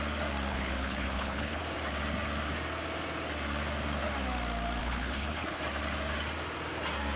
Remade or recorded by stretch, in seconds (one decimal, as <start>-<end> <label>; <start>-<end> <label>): 0.0-0.5 recorded; 0.5-1.6 remade; 1.6-4.8 recorded; 4.8-5.6 remade; 5.6-7.2 recorded